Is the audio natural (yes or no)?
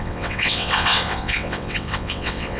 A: no